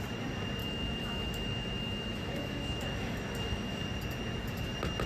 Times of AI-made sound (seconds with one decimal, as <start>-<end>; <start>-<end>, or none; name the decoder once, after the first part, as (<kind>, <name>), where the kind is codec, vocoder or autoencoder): 0.6-3.7 (autoencoder, DAC-VAE)